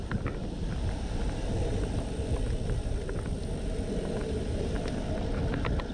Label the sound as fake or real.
real